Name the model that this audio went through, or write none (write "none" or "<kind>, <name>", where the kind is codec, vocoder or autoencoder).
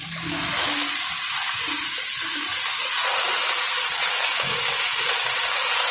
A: none